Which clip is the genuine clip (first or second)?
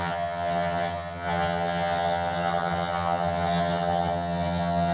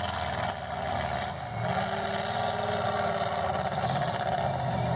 second